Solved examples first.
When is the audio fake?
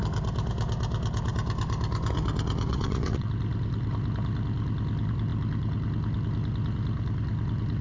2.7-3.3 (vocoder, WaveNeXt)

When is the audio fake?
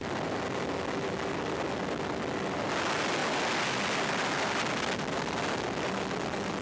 none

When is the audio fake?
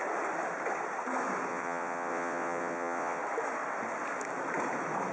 1.5-3.2 (vocoder, WaveNeXt)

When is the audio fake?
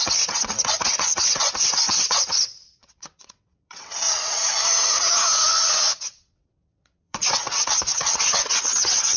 0.0-4.5 (vocoder, WaveNeXt); 5.5-9.2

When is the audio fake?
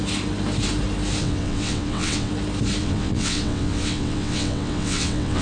1.2-2.3 (vocoder, WaveNeXt); 2.8-5.4